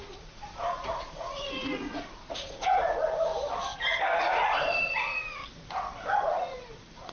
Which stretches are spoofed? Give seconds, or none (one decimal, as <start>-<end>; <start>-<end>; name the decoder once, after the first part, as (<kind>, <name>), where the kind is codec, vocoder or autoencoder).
0.0-3.3 (vocoder, Vocos); 4.2-5.4; 6.2-7.1